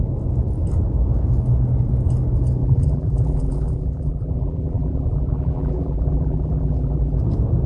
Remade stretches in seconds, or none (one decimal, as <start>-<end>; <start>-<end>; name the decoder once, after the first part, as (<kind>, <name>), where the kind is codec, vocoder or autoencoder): 2.6-7.2 (vocoder, BigVGAN v2)